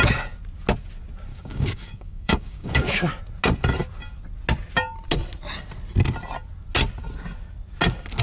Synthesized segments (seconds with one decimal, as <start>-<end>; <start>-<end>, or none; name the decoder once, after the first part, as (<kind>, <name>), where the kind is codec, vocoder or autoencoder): 1.3-3.2 (codec, DAC)